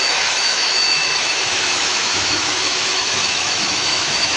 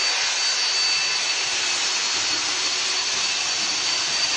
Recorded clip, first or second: second